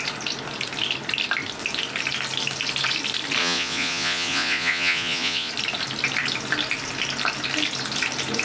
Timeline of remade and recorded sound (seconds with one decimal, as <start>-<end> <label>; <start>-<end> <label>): 0.0-3.4 recorded; 3.4-5.5 remade; 5.5-8.4 recorded